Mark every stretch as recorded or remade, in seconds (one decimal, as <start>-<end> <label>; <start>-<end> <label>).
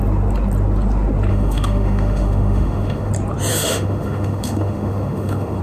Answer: 0.0-1.3 recorded; 1.3-3.1 remade; 3.1-3.5 recorded; 3.5-5.6 remade